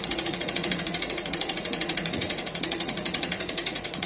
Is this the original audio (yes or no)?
no